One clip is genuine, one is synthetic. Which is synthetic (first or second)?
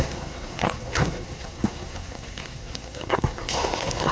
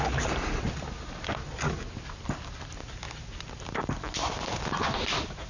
first